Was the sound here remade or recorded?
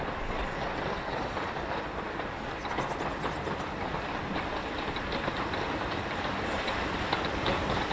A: recorded